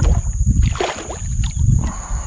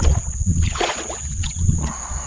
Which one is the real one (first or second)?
first